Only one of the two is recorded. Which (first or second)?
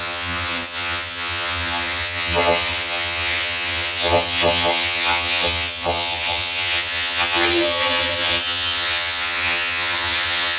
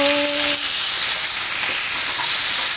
second